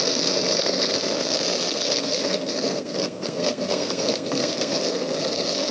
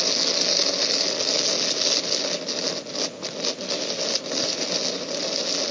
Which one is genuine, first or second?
second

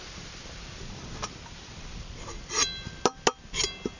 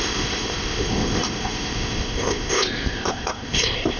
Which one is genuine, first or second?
first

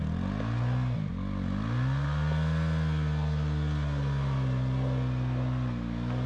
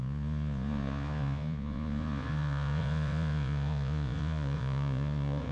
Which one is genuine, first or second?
first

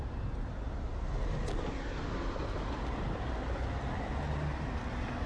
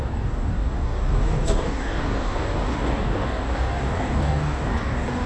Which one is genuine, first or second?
first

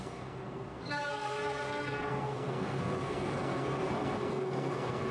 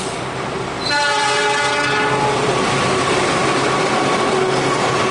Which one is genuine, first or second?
second